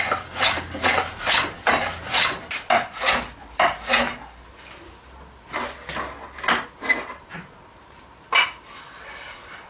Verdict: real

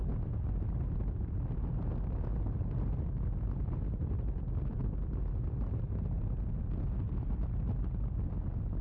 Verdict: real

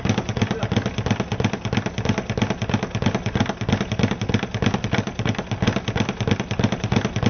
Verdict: real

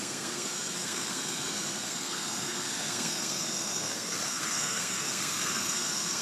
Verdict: fake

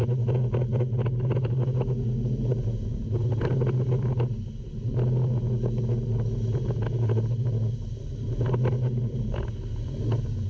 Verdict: real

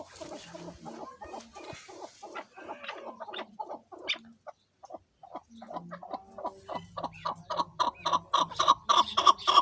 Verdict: real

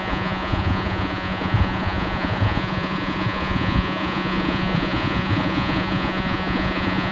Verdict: fake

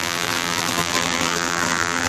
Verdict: fake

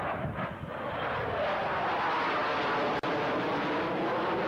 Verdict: real